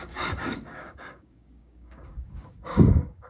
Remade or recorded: remade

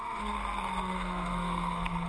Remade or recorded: remade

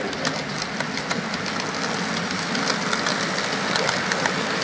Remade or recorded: recorded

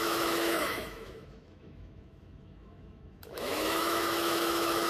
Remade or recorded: remade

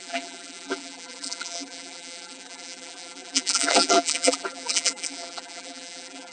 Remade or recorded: remade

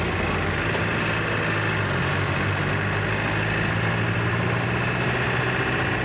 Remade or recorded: recorded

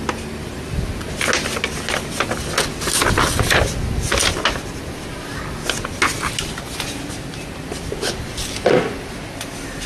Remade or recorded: recorded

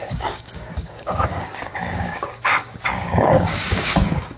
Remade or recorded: remade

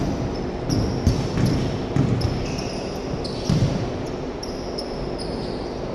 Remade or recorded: recorded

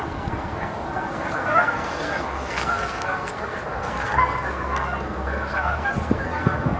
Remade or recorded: remade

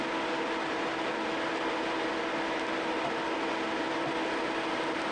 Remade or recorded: recorded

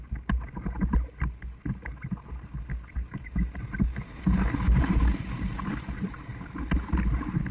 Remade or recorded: recorded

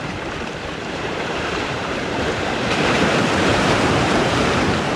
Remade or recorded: remade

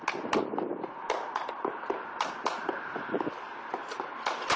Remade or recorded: recorded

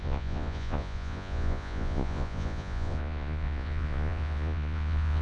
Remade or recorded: remade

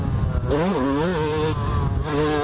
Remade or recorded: recorded